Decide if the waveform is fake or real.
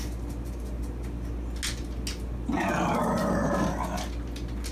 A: real